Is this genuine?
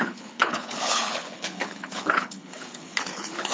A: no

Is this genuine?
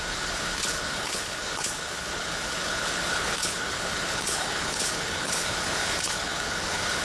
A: no